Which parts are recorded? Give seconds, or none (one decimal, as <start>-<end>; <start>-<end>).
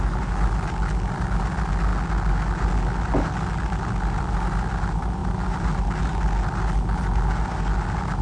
0.0-8.2